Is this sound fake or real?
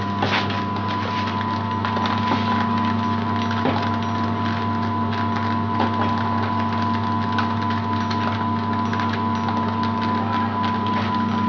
real